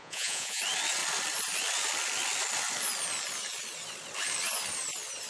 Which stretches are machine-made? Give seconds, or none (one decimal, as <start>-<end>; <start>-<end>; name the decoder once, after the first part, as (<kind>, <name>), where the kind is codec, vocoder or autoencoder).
0.0-0.6 (vocoder, Vocos)